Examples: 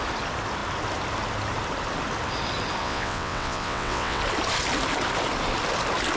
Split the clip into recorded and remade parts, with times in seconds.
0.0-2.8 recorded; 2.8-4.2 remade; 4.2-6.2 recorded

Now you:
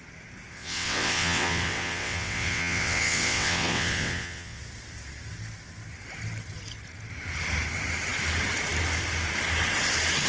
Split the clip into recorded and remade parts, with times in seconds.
0.0-0.5 recorded; 0.5-4.6 remade; 4.6-10.3 recorded

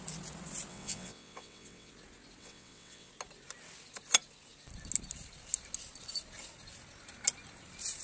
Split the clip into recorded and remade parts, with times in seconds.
0.0-0.7 recorded; 0.7-1.9 remade; 1.9-2.4 recorded; 2.4-3.1 remade; 3.1-8.0 recorded